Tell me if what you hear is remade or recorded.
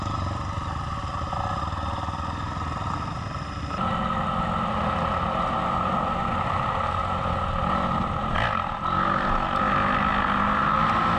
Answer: recorded